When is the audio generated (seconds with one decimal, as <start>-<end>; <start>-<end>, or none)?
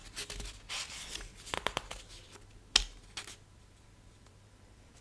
0.7-1.3; 4.2-5.0